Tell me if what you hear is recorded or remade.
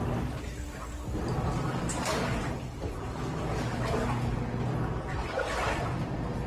recorded